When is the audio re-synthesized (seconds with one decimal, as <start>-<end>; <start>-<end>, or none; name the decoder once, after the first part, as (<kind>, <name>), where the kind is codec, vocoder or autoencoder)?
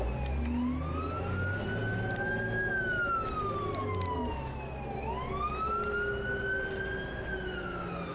none